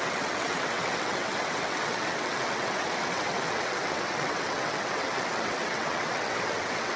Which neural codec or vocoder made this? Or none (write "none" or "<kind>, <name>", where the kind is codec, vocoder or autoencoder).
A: vocoder, WaveNeXt